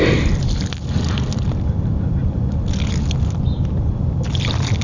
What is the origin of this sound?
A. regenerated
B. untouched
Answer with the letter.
B